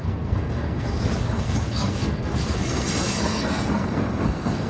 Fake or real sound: fake